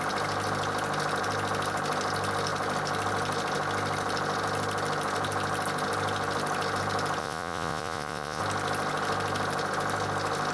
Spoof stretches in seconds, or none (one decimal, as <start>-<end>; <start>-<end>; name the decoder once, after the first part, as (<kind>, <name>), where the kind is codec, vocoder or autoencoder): 7.2-8.4 (vocoder, Vocos)